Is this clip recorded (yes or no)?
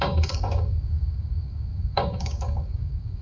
no